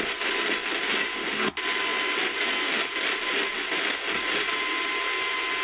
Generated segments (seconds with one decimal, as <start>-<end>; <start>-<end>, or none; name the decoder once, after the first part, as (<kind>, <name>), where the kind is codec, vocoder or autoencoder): none